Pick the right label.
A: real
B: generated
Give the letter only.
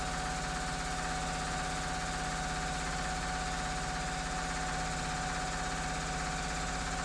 A